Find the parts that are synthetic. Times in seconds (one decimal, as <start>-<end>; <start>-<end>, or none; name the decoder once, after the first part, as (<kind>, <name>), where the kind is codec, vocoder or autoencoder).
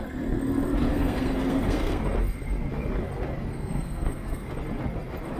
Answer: 0.9-2.0 (codec, SNAC); 3.5-4.5